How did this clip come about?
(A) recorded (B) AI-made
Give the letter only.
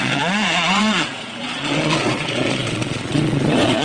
B